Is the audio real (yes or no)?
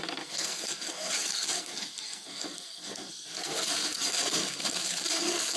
no